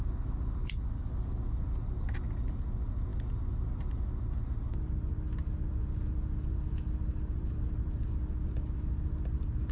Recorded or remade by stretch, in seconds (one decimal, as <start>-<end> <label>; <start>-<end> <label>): 0.0-9.7 recorded